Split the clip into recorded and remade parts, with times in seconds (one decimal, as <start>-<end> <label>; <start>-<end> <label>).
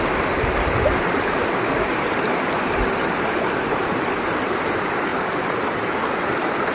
0.0-6.7 recorded